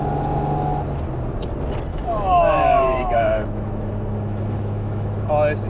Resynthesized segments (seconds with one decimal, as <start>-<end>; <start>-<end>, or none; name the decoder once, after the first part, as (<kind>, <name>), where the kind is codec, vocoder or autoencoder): 1.9-5.3 (autoencoder, DAC-VAE)